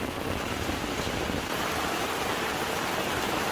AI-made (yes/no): no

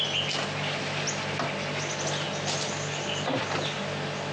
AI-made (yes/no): no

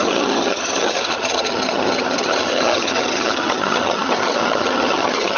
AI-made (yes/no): yes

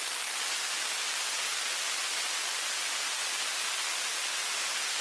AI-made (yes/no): no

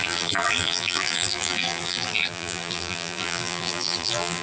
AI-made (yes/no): yes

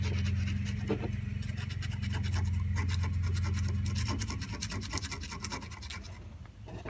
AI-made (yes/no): no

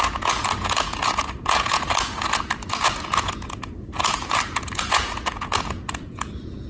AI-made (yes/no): yes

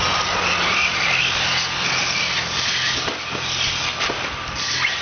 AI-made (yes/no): no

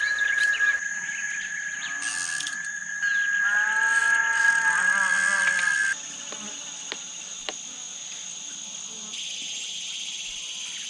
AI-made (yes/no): no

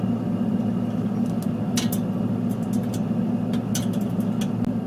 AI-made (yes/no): no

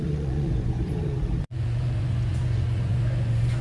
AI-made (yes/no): yes